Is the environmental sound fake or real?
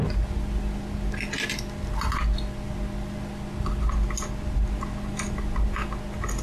real